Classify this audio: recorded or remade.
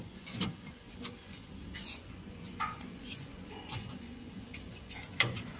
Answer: remade